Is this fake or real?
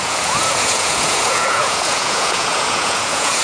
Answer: fake